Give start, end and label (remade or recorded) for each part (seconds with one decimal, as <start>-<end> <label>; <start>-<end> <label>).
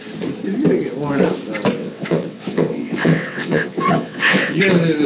0.0-1.8 recorded; 1.8-4.6 remade; 4.6-5.1 recorded